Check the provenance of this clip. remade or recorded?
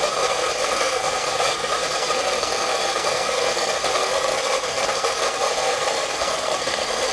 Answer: remade